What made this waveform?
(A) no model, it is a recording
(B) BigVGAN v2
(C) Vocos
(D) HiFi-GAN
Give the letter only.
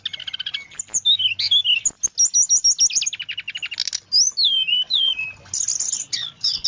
A